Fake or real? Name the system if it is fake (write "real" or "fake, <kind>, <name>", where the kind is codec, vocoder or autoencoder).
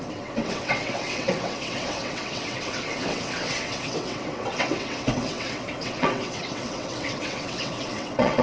fake, vocoder, WaveNeXt